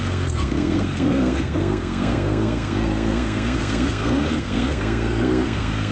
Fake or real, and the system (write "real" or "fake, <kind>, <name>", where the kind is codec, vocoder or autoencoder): fake, codec, SNAC